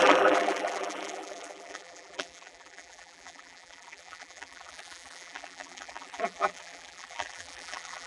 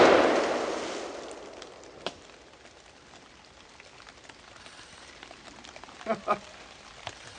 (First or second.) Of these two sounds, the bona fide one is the second